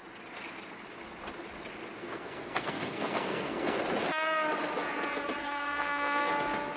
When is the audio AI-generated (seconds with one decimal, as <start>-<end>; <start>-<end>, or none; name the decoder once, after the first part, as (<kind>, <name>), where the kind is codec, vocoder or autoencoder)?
2.0-3.8 (codec, SNAC); 5.4-6.3